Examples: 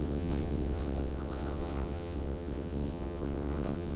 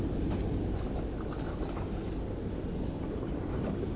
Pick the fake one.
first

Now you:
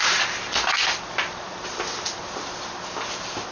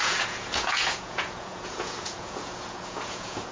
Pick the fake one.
second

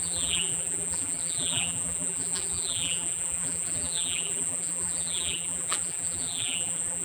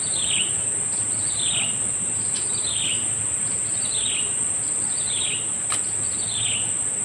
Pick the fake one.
first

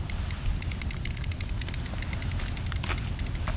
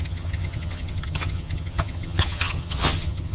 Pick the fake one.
second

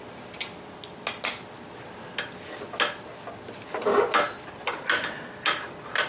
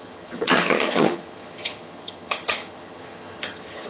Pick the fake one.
second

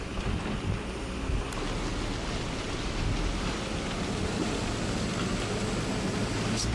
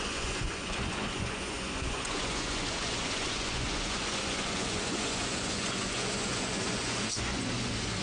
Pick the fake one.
second